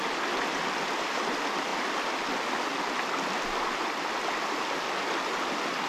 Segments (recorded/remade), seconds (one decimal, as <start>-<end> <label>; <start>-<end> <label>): 0.0-5.9 recorded